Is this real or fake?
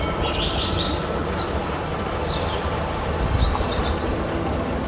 real